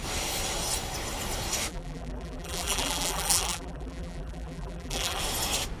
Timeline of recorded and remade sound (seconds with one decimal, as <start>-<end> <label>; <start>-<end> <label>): 0.0-1.7 recorded; 1.7-5.2 remade; 5.2-5.8 recorded